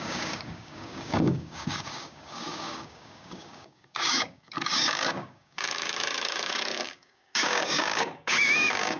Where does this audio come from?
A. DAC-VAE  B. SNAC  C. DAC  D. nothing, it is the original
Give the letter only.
C